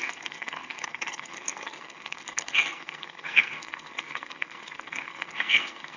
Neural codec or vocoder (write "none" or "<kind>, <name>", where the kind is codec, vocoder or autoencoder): codec, SNAC